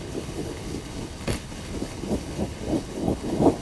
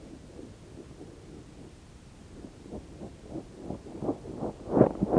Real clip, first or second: second